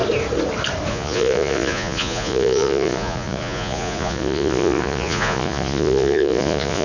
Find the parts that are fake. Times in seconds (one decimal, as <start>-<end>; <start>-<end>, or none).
0.9-6.8